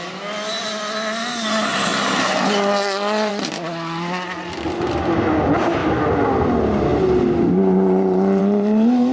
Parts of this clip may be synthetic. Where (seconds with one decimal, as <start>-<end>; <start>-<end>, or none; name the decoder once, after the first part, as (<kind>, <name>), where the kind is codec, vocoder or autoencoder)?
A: none